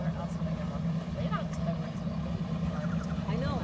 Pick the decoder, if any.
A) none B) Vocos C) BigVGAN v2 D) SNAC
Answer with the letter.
A